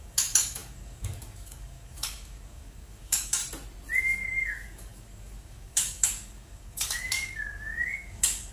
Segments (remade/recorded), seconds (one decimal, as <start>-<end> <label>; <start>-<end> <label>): 0.0-3.4 remade; 3.4-4.0 recorded; 4.0-8.5 remade